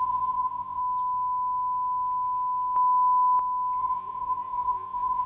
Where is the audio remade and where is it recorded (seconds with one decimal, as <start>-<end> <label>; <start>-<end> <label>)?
0.0-0.8 remade; 0.8-3.8 recorded; 3.8-5.3 remade